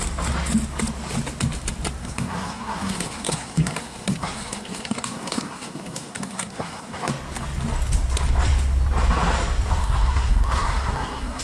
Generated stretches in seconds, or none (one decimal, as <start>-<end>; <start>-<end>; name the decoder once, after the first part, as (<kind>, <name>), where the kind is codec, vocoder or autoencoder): 2.0-7.1 (codec, SNAC); 9.8-11.4